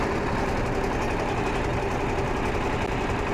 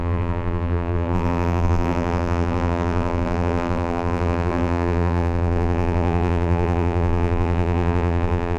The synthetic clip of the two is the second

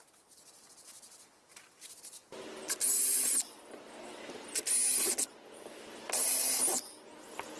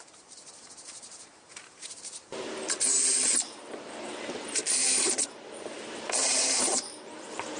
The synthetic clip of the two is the second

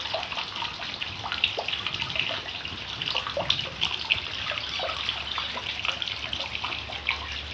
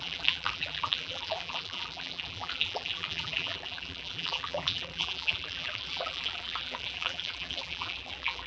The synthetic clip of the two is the second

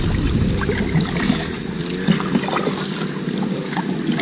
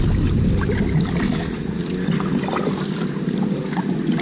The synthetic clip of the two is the second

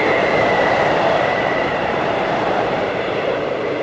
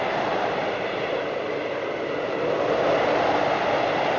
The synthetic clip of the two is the first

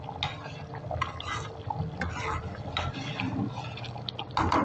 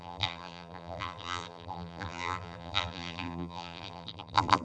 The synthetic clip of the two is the second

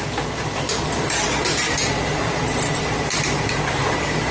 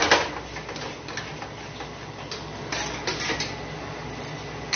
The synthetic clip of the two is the first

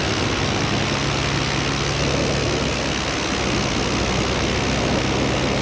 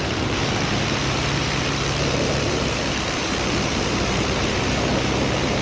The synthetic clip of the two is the second